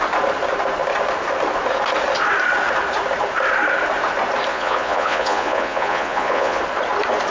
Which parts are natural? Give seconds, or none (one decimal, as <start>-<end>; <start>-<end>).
0.0-4.5; 6.6-7.3